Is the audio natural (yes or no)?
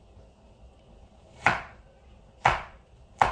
no